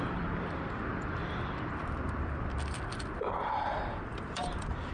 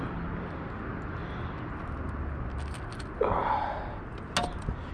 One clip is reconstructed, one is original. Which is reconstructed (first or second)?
first